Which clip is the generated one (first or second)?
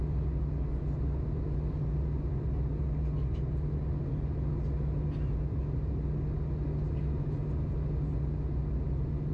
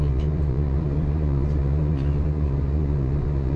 second